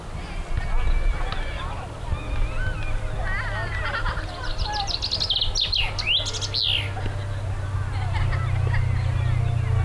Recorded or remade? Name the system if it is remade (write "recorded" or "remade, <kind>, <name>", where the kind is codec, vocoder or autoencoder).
recorded